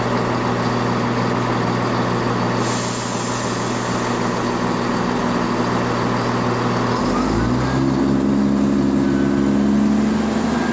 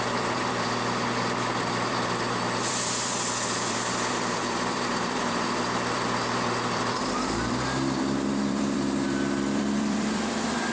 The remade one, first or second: second